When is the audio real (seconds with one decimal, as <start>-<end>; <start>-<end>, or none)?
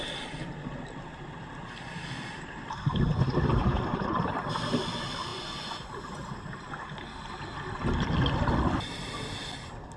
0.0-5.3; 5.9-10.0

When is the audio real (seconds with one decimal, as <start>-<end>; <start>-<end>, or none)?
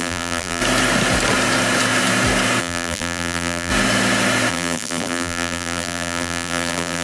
0.6-2.6; 3.7-4.5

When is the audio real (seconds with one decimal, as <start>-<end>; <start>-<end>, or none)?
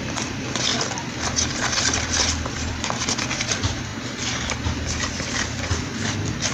3.9-4.8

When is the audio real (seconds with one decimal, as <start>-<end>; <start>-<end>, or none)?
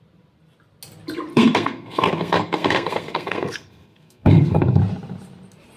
0.0-1.3; 4.8-5.8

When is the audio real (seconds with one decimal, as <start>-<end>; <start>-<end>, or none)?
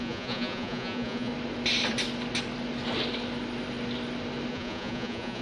1.3-4.5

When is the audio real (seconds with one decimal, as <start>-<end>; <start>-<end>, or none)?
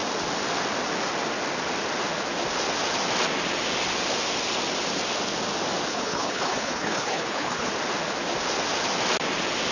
0.0-5.9; 7.7-9.7